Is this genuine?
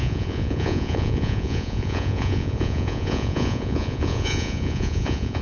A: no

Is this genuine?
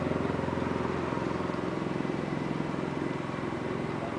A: yes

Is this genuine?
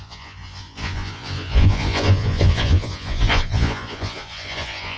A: no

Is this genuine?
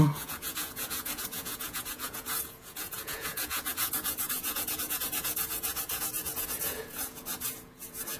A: no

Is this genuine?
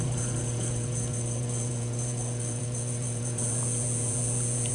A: no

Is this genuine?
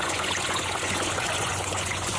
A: no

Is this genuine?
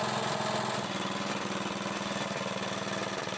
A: yes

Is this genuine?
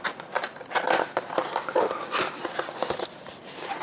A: yes